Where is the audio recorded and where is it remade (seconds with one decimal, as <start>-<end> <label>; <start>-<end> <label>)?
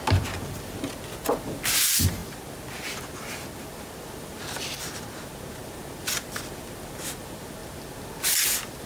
0.0-8.9 recorded